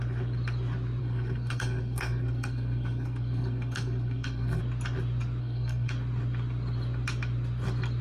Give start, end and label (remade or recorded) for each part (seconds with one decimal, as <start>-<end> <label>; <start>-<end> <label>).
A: 0.0-1.0 recorded; 1.0-4.6 remade; 4.6-5.4 recorded; 5.4-5.9 remade; 5.9-8.0 recorded

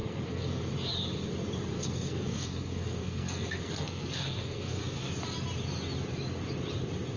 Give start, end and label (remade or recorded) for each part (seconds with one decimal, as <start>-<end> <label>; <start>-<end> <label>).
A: 0.0-0.6 remade; 0.6-1.7 recorded; 1.7-5.1 remade; 5.1-7.2 recorded